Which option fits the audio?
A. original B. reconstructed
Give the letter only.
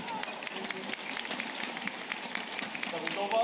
A